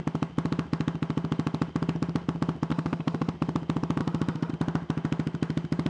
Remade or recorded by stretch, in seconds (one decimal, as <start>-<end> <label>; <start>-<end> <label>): 0.0-2.7 recorded; 2.7-3.3 remade; 3.3-4.0 recorded; 4.0-4.5 remade; 4.5-5.9 recorded